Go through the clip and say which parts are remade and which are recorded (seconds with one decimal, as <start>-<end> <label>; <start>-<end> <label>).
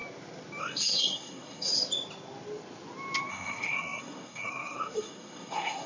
0.0-0.6 recorded; 0.6-1.7 remade; 1.7-3.3 recorded; 3.3-5.9 remade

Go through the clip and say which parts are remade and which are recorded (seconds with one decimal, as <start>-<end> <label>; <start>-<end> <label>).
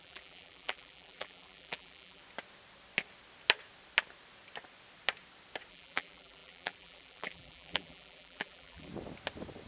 0.0-2.2 remade; 2.2-5.7 recorded; 5.7-8.9 remade; 8.9-9.7 recorded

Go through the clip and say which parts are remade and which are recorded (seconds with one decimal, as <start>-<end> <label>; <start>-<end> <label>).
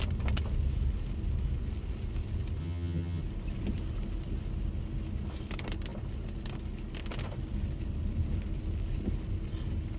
0.0-2.6 recorded; 2.6-3.2 remade; 3.2-10.0 recorded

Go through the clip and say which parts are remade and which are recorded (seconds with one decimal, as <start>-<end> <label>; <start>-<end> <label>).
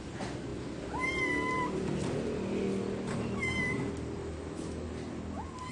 0.0-4.2 recorded; 4.2-4.9 remade; 4.9-5.7 recorded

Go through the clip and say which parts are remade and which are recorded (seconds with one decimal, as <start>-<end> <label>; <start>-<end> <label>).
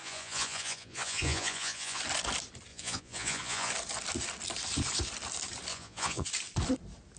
0.0-2.0 remade; 2.0-2.7 recorded; 2.7-3.7 remade; 3.7-5.7 recorded; 5.7-6.3 remade; 6.3-7.2 recorded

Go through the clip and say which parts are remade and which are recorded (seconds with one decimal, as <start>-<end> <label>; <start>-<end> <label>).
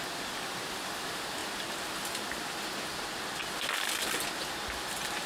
0.0-5.3 recorded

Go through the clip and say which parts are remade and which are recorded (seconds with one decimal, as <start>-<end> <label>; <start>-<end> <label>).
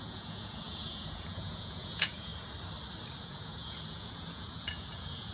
0.0-2.3 remade; 2.3-3.2 recorded; 3.2-5.3 remade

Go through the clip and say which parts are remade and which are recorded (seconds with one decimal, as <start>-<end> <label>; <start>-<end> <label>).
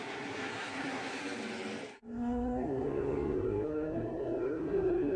0.0-1.2 remade; 1.2-1.9 recorded; 1.9-5.2 remade